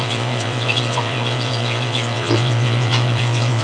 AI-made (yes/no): yes